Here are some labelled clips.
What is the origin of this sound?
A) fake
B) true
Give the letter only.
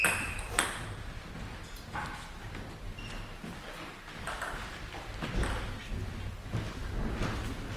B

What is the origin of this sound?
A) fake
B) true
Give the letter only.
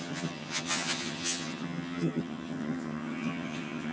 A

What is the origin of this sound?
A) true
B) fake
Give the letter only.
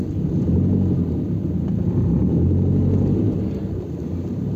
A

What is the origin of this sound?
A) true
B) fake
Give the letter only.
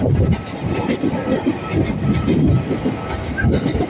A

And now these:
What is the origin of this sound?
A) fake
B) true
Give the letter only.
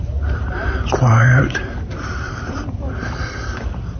A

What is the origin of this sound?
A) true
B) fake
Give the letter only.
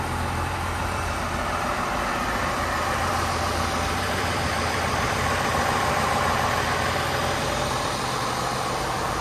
B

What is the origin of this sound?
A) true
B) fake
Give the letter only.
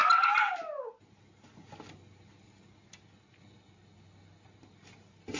A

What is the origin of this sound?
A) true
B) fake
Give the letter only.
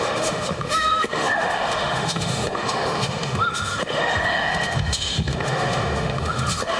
B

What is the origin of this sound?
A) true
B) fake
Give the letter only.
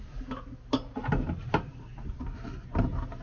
A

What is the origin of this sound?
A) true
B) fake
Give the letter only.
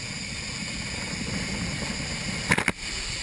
A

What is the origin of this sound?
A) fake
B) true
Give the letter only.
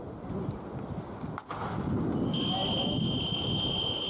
B